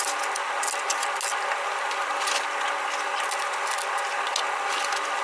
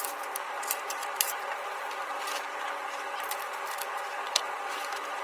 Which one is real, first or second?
first